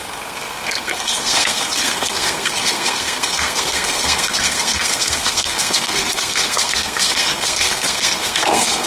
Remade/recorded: remade